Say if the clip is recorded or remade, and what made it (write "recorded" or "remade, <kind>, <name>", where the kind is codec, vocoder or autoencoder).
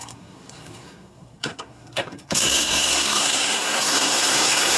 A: remade, codec, SNAC